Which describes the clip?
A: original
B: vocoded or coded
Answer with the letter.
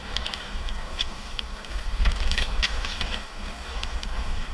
B